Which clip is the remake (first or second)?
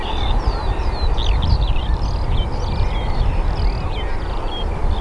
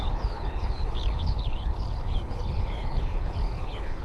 second